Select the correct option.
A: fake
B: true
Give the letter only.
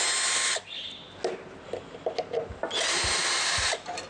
B